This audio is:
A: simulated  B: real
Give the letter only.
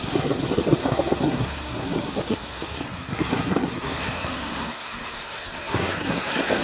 A